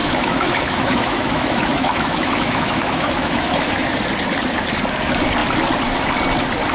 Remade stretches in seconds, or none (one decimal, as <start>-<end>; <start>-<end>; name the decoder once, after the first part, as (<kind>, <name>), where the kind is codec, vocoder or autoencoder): 0.0-4.0 (autoencoder, DAC-VAE)